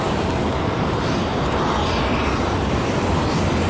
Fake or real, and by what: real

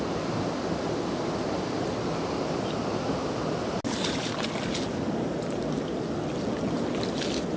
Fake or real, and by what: real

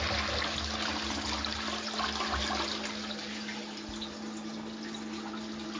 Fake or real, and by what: real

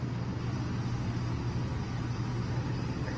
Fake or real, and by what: real